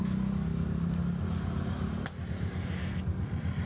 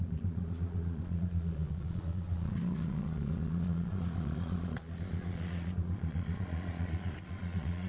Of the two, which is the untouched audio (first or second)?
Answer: first